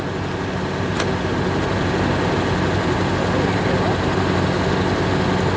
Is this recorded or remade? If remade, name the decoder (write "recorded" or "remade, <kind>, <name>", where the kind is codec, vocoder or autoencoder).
recorded